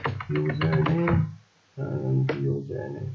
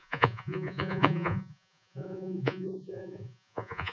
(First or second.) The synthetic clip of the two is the second